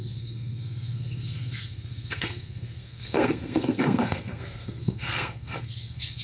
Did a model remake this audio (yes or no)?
yes